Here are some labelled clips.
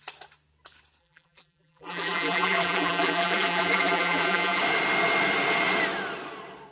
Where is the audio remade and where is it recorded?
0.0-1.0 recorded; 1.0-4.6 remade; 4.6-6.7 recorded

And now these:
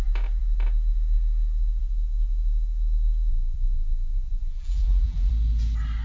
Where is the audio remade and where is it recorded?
0.0-3.3 recorded; 3.3-5.3 remade; 5.3-6.0 recorded

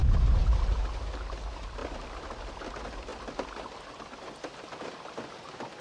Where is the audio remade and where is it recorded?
0.0-0.8 remade; 0.8-5.8 recorded